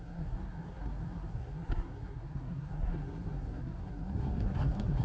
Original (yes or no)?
no